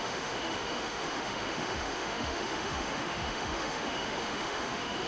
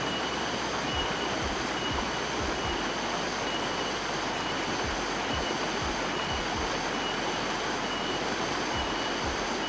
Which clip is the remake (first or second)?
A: first